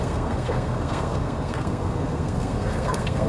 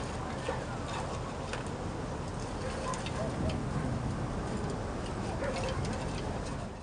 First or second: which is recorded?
second